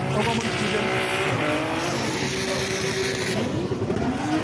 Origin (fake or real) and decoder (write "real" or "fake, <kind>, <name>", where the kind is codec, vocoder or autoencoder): real